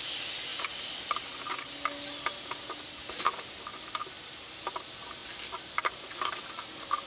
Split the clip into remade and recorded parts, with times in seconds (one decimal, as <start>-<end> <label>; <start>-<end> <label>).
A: 0.0-7.1 recorded